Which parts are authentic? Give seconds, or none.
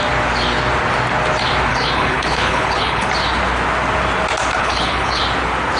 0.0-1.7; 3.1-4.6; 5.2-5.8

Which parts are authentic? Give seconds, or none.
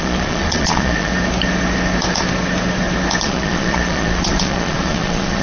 1.1-3.2